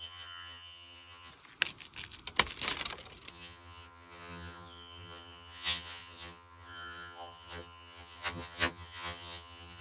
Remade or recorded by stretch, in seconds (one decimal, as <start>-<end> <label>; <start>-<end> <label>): 0.0-1.3 remade; 1.3-3.3 recorded; 3.3-9.8 remade